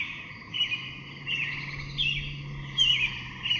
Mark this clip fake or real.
real